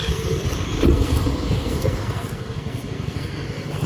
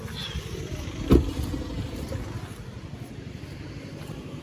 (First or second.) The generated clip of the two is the first